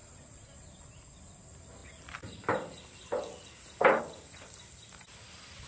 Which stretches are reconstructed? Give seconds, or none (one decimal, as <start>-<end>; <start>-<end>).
none